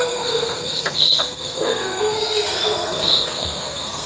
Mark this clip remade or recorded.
remade